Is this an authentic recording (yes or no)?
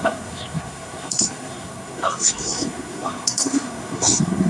no